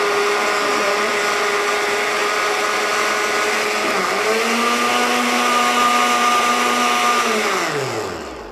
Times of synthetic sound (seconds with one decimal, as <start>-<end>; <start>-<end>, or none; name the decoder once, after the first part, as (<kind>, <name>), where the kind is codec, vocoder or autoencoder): none